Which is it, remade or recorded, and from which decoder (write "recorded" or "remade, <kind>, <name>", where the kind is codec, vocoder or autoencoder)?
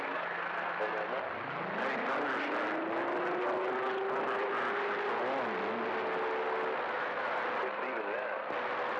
recorded